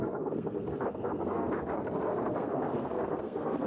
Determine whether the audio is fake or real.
fake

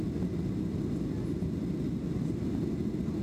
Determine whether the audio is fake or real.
real